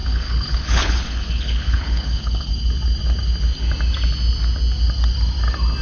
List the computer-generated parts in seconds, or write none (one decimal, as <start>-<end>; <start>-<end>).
0.0-2.5